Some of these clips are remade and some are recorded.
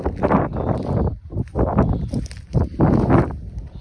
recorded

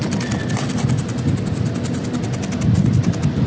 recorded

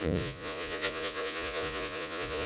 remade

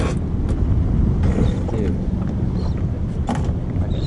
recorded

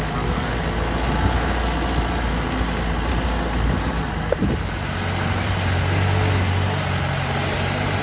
recorded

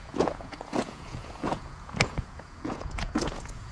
remade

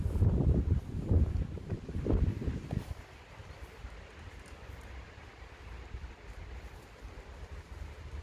recorded